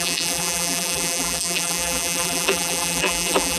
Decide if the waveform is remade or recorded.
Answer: remade